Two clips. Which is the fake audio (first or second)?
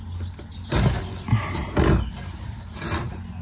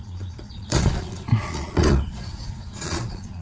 second